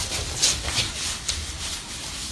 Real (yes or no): yes